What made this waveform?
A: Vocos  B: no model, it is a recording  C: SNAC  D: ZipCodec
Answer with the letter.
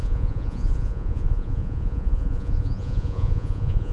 A